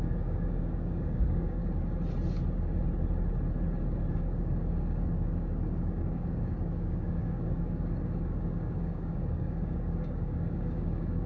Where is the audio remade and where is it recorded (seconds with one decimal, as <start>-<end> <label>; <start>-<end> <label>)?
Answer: 0.0-1.6 remade; 1.6-4.1 recorded; 4.1-11.3 remade